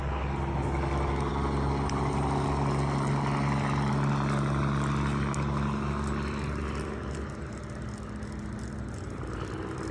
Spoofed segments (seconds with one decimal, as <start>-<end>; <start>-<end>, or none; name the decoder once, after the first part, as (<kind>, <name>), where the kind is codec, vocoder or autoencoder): none